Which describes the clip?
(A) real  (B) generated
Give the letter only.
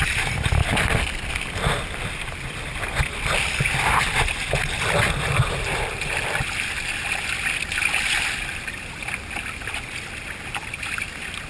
A